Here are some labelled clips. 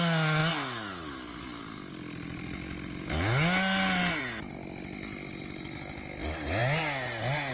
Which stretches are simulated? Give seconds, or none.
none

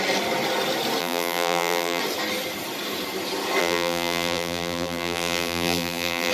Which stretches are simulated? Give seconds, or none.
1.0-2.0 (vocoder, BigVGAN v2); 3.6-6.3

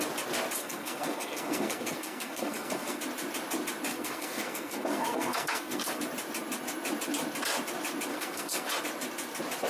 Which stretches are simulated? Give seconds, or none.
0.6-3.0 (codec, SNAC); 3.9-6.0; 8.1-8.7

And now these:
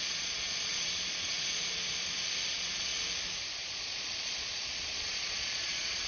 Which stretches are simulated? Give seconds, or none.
0.0-1.9 (vocoder, Vocos); 2.5-2.9; 3.6-6.1

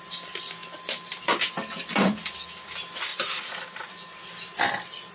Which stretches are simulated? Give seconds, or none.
none